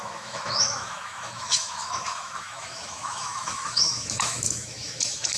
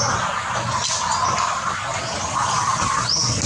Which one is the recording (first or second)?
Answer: second